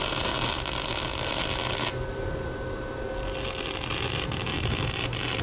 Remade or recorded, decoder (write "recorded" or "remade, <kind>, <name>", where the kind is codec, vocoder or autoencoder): recorded